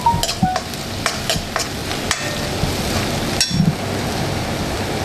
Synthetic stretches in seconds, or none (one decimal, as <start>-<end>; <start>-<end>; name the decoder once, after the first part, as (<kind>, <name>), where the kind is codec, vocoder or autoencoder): none